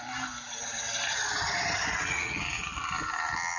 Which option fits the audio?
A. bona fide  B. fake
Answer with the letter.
A